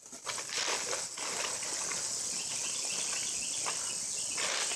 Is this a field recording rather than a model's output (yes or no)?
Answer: yes